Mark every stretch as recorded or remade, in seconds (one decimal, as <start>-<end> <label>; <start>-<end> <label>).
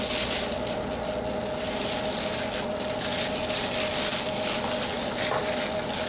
0.0-6.1 recorded